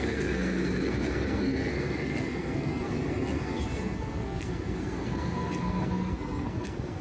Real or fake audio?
fake